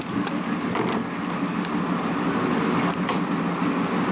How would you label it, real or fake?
real